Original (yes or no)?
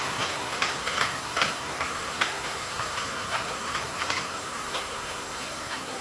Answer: no